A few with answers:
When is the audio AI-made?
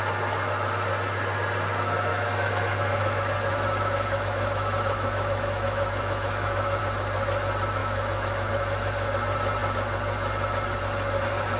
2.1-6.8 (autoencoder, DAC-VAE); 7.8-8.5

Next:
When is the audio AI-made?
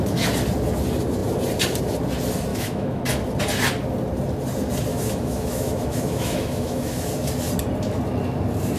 2.5-3.0 (autoencoder, DAC-VAE); 4.9-7.1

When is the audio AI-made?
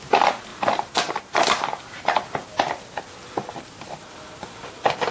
none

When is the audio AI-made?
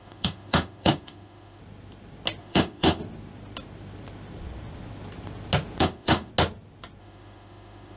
0.0-1.6 (autoencoder, DAC-VAE); 2.4-3.0; 5.8-6.3; 7.0-8.0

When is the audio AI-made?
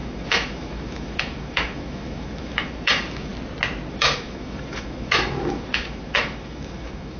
0.0-3.3 (autoencoder, DAC-VAE); 3.9-7.2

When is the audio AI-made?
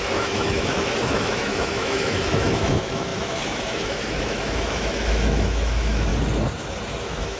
0.0-6.1 (autoencoder, DAC-VAE); 7.0-7.4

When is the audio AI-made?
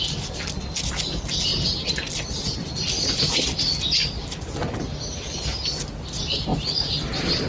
none